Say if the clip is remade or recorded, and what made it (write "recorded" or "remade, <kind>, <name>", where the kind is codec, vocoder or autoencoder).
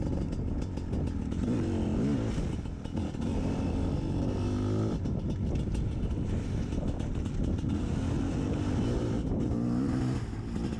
recorded